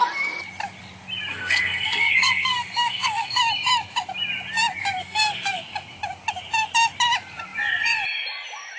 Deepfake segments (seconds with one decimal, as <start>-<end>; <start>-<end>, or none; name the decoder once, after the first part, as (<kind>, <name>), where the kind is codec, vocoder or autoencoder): 1.3-3.4 (codec, SNAC); 5.0-5.6